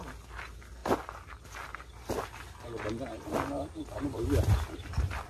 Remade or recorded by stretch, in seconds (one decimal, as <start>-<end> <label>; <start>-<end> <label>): 0.0-5.3 recorded